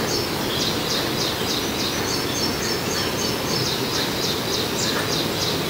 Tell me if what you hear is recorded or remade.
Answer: recorded